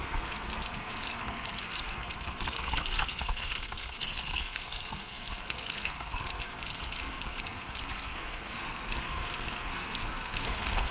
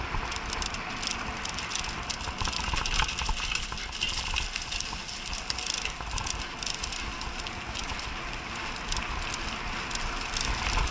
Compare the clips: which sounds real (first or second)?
second